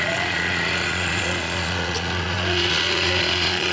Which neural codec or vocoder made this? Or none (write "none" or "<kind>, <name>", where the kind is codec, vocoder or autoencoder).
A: vocoder, Vocos